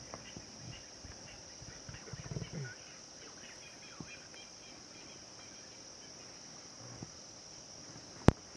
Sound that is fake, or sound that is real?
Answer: real